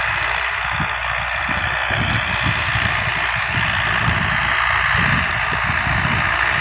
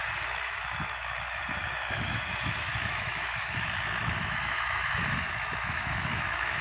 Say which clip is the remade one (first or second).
second